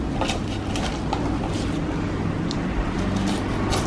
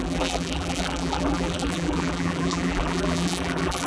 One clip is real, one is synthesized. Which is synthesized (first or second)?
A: second